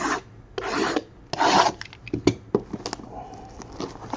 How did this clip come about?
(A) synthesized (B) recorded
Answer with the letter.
B